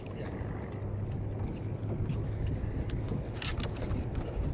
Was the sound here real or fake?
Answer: real